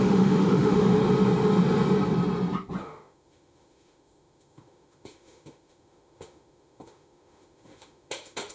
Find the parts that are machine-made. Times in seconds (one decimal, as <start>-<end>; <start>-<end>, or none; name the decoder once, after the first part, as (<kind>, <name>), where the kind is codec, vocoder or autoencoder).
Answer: 0.0-1.0 (autoencoder, DAC-VAE); 2.8-8.5